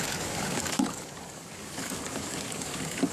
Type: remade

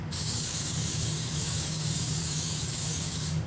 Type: remade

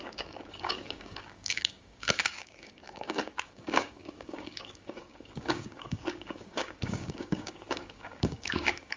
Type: remade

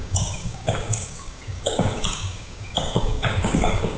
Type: remade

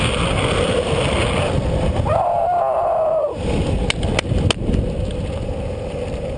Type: recorded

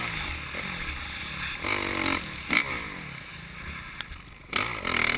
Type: recorded